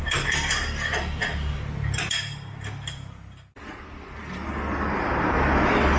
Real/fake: real